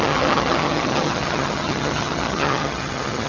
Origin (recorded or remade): remade